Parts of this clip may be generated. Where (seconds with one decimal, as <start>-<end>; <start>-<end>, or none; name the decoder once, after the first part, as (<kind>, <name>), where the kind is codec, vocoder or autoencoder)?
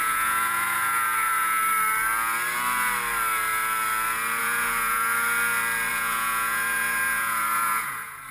0.0-1.6 (vocoder, Vocos); 4.4-5.1; 5.9-8.3